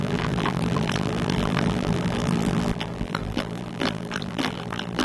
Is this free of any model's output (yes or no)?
no